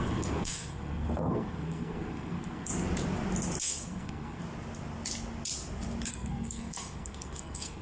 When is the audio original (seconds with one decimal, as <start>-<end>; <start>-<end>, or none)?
2.7-3.6; 4.4-6.1